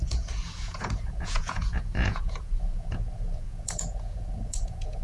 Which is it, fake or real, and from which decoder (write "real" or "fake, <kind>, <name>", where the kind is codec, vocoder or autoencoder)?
fake, vocoder, Vocos